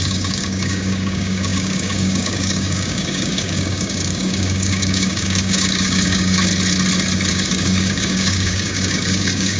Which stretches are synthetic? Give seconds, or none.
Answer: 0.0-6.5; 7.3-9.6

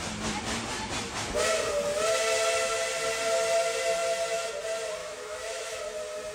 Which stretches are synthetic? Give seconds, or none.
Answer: 5.0-5.8

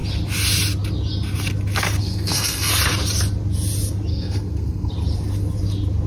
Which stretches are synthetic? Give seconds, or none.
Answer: 2.0-2.7; 4.1-4.9